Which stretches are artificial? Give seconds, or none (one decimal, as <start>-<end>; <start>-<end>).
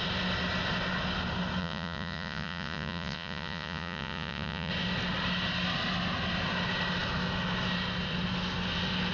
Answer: 1.6-4.7